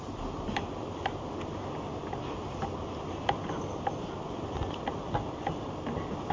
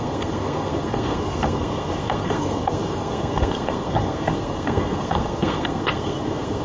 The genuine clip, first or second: first